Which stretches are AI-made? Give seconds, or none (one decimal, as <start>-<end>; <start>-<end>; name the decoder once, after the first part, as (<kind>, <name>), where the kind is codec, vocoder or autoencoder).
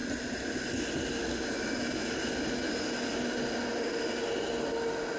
none